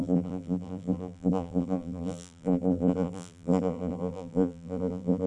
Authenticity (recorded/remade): remade